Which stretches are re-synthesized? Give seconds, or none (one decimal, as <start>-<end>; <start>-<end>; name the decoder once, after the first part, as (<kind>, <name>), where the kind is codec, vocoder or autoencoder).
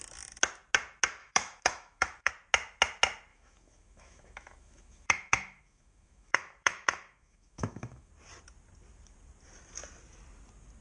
1.2-2.3 (autoencoder, DAC-VAE); 3.3-8.1